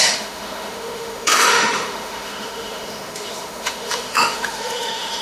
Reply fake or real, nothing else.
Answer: fake